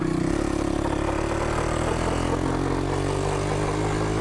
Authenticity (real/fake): real